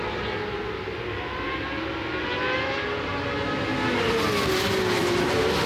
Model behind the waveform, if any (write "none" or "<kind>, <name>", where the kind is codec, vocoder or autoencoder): none